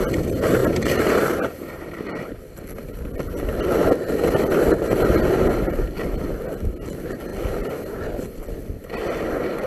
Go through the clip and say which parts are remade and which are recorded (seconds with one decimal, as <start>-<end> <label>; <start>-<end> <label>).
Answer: 0.0-0.6 recorded; 0.6-2.3 remade; 2.3-9.7 recorded